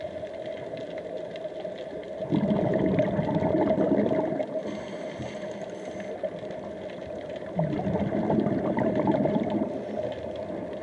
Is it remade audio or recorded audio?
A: recorded